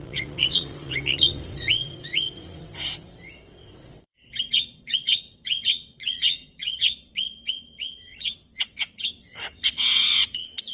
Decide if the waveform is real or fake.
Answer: fake